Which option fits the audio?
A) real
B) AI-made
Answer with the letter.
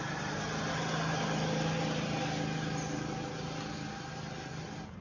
A